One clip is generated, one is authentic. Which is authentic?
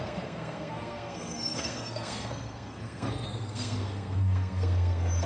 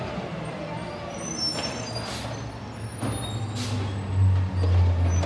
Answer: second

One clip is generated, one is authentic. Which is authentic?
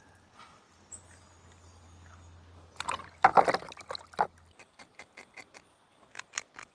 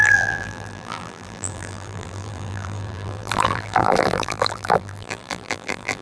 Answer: first